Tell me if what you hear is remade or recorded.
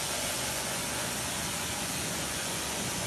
remade